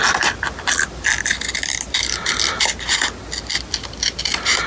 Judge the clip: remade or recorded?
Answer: recorded